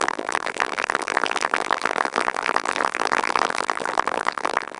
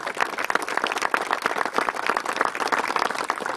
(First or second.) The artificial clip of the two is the first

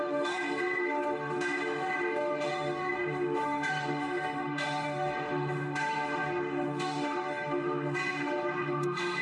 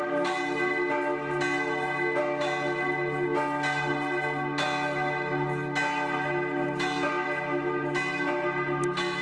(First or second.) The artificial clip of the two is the first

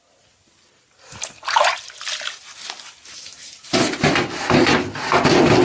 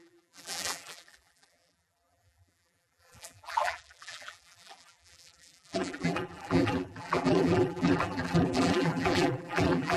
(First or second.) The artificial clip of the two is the second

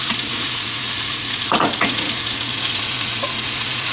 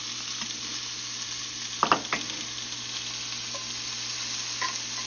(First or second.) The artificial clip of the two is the first